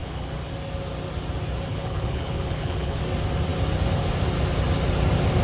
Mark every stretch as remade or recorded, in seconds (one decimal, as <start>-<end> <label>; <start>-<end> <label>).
0.0-0.5 remade; 0.5-1.7 recorded; 1.7-3.0 remade; 3.0-5.4 recorded